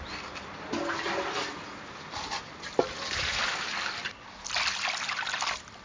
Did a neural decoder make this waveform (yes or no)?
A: no